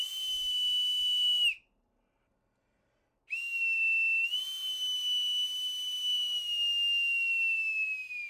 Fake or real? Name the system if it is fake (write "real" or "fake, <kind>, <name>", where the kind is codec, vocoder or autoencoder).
real